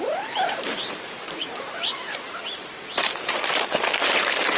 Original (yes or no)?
no